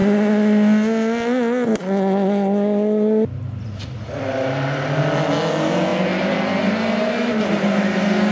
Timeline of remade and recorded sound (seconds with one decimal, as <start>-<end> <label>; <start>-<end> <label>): 0.0-8.3 recorded